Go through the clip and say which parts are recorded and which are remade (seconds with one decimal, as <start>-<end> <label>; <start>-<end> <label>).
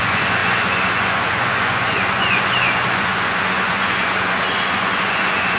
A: 0.0-5.6 remade